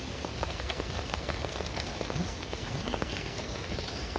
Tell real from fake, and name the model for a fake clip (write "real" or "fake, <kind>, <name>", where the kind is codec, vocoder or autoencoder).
fake, codec, SNAC